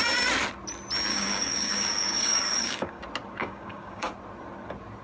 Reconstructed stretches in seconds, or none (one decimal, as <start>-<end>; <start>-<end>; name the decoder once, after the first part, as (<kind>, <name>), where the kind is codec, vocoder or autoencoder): 1.1-3.0 (codec, DAC); 3.4-4.1